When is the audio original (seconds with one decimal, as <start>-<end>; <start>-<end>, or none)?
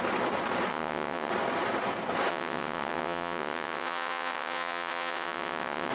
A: 0.0-0.7; 1.3-2.3